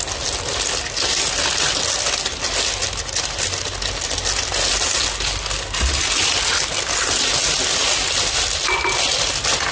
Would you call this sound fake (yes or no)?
no